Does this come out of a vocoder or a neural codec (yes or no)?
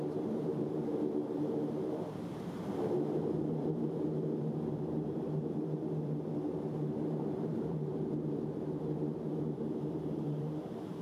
yes